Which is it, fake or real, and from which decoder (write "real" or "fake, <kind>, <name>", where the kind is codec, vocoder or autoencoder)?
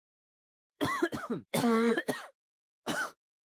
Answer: fake, autoencoder, DAC-VAE